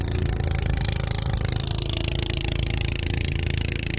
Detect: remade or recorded recorded